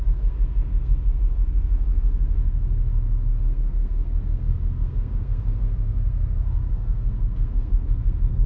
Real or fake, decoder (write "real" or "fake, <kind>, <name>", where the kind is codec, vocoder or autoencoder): fake, codec, SNAC